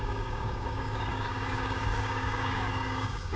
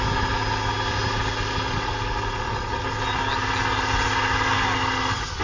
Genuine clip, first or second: second